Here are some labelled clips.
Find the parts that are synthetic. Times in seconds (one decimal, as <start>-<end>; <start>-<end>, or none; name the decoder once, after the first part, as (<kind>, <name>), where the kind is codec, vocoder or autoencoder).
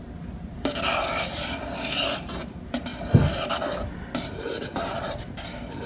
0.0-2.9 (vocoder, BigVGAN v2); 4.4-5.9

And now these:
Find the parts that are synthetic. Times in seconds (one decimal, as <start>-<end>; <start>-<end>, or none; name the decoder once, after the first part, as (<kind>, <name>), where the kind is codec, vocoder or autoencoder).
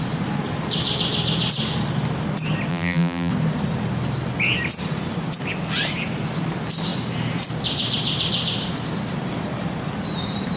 2.7-3.3 (vocoder, BigVGAN v2)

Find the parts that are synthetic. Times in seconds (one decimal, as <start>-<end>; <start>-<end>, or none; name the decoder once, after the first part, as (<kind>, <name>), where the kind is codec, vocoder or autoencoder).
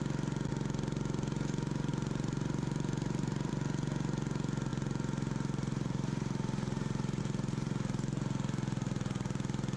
1.9-3.5 (vocoder, BigVGAN v2); 4.7-7.2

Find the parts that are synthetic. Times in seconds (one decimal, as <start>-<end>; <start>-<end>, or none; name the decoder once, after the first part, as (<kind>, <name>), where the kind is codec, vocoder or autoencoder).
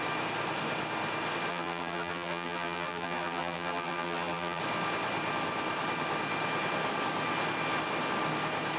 1.5-4.6 (vocoder, BigVGAN v2)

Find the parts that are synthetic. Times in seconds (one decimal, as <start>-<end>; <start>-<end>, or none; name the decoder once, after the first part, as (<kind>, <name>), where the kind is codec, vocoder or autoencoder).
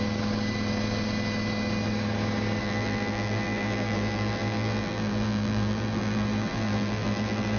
2.6-7.6 (vocoder, BigVGAN v2)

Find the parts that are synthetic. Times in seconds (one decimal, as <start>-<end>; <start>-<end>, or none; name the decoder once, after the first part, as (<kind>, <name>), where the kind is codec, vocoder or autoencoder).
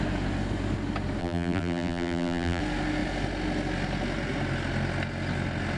1.2-2.6 (vocoder, BigVGAN v2)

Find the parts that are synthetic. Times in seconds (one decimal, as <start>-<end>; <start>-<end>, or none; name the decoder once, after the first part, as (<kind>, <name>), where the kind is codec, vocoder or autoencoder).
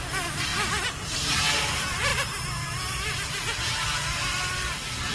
0.0-0.5 (vocoder, BigVGAN v2); 1.1-5.1